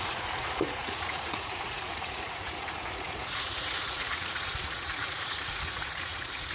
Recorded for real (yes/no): no